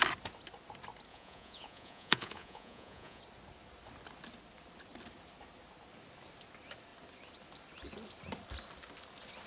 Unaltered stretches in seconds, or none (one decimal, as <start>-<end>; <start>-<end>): 0.0-1.1; 3.2-9.5